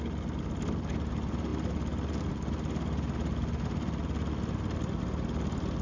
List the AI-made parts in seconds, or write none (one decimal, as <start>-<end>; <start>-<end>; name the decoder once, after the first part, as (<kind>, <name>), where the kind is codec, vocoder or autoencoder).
none